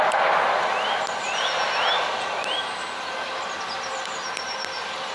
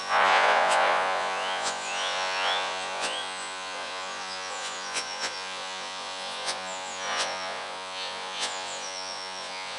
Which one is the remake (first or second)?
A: second